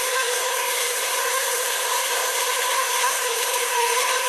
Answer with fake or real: fake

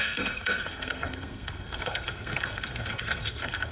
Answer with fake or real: fake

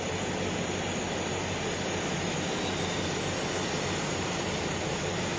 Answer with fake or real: real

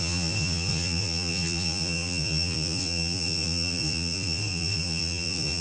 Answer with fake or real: fake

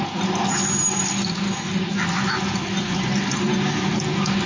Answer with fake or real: real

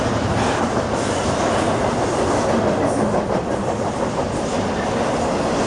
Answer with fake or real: real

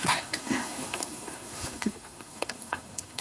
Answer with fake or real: fake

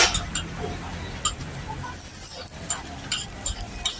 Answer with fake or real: real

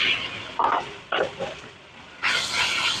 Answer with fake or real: real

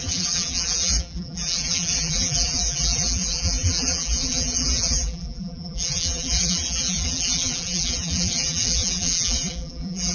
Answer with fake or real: fake